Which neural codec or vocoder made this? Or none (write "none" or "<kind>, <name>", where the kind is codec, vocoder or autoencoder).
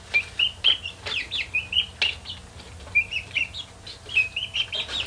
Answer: none